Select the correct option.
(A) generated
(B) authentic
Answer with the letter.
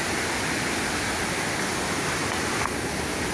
B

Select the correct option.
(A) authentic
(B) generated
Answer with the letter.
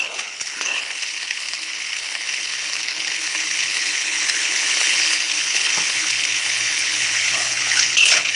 B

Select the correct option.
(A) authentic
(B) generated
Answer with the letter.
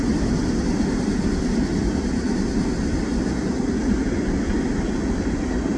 A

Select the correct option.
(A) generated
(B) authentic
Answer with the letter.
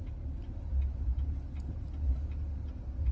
B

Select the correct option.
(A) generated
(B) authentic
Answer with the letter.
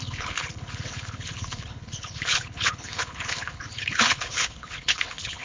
A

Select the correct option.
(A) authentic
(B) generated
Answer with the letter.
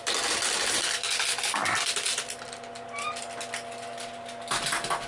A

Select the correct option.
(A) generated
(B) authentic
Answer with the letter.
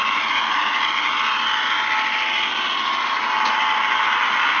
B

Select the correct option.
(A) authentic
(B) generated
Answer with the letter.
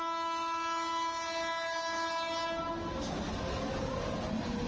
A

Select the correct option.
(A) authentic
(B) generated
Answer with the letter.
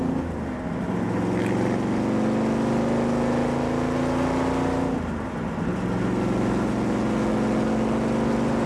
A